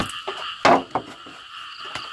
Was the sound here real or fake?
real